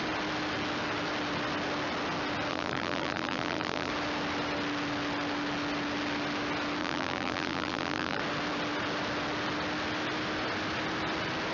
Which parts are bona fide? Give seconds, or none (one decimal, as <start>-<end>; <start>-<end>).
0.0-2.5; 3.9-6.8; 8.2-11.5